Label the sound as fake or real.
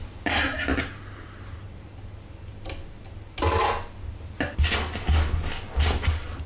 real